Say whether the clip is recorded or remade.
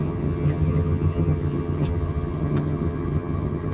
remade